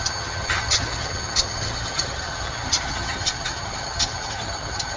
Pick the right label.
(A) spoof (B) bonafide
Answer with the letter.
A